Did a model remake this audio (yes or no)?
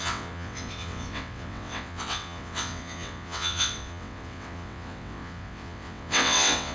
yes